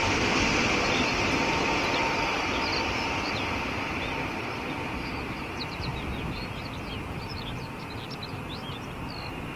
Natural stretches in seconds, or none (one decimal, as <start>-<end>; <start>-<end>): 0.0-2.7; 5.1-5.9; 6.9-9.6